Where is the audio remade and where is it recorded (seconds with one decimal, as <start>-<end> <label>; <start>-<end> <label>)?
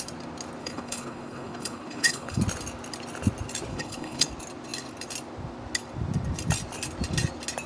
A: 0.0-0.6 recorded; 0.6-2.4 remade; 2.4-3.7 recorded; 3.7-4.3 remade; 4.3-7.7 recorded